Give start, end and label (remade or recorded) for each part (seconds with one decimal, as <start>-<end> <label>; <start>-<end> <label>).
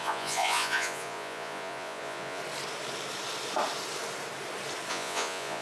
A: 0.0-2.4 remade; 2.4-4.9 recorded; 4.9-5.6 remade